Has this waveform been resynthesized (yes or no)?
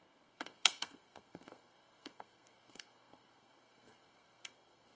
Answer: yes